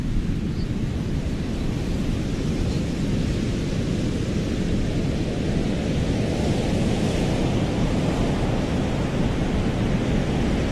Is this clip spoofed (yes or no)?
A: no